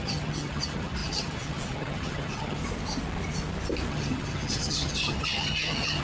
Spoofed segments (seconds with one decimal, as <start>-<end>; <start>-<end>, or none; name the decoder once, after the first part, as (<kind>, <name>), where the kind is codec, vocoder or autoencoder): 0.0-2.6 (vocoder, HiFi-GAN); 3.9-6.0

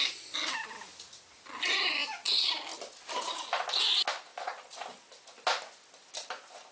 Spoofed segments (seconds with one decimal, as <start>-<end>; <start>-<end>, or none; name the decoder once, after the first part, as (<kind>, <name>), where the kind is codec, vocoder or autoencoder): 4.3-5.0 (vocoder, Vocos)

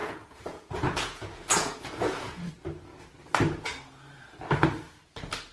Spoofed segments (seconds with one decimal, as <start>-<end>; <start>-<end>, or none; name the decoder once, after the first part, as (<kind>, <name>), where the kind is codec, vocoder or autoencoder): 0.0-2.5 (vocoder, Vocos)